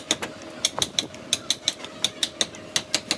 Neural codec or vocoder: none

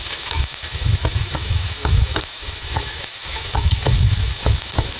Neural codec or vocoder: autoencoder, DAC-VAE